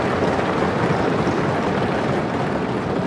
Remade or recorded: recorded